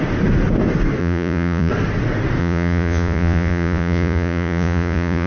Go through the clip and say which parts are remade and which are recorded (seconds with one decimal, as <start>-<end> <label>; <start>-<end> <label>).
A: 0.0-1.0 recorded; 1.0-1.7 remade; 1.7-2.4 recorded; 2.4-5.3 remade